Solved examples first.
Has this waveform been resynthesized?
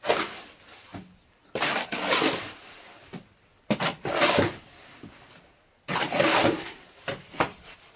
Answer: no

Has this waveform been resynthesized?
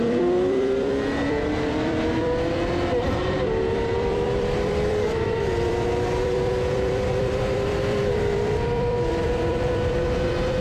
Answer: yes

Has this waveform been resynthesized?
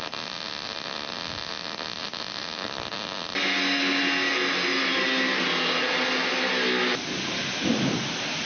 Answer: no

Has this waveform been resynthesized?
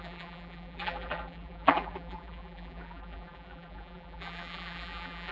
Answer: yes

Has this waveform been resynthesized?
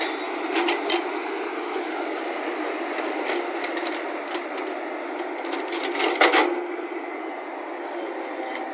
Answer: no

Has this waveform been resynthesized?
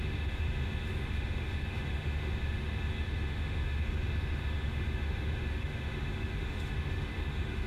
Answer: yes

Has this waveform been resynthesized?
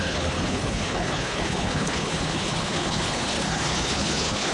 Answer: yes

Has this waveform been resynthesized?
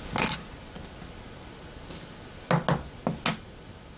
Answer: no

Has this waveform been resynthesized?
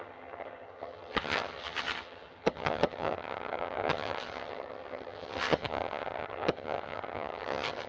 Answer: yes